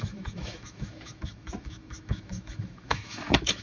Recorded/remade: remade